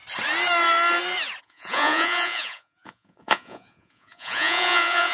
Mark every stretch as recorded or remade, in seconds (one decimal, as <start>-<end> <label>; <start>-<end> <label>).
0.0-1.4 recorded; 1.4-5.1 remade